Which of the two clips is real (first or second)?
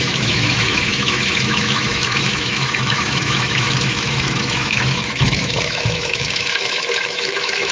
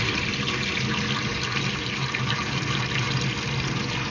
second